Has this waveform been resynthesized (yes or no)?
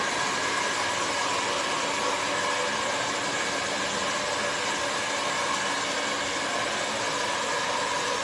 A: no